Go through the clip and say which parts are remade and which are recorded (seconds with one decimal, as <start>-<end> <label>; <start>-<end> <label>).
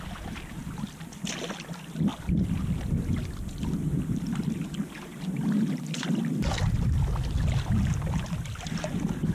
0.0-9.3 recorded